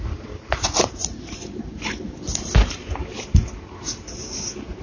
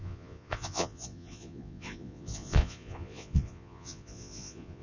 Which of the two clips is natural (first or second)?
first